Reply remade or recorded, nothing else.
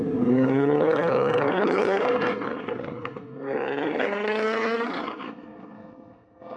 remade